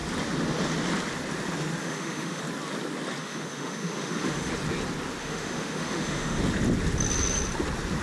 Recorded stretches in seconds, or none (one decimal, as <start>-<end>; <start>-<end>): 0.0-1.8; 2.4-3.2; 4.5-5.2; 6.4-8.0